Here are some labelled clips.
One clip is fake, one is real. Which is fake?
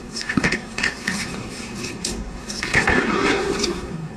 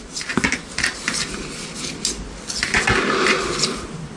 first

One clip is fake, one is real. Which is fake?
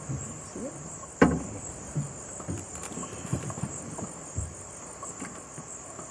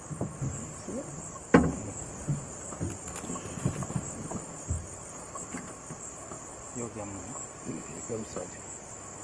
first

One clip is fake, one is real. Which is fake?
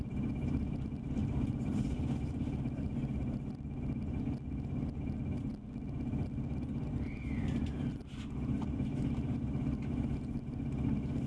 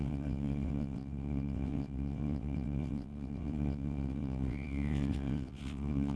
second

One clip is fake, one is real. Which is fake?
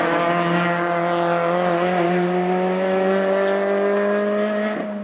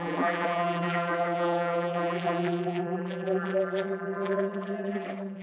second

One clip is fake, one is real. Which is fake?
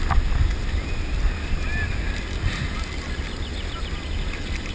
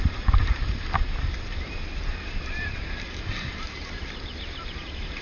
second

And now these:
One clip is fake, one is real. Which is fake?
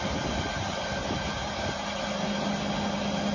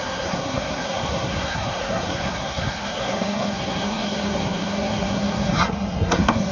second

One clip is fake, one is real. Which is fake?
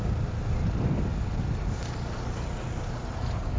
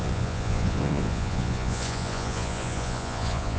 second